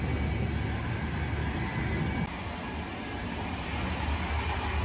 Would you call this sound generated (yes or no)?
no